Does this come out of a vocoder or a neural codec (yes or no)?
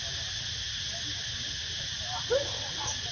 no